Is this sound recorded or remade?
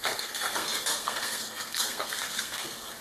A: remade